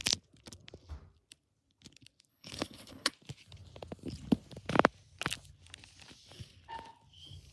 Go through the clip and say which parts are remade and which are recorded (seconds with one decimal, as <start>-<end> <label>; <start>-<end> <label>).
0.0-2.3 recorded; 2.3-3.1 remade; 3.1-7.5 recorded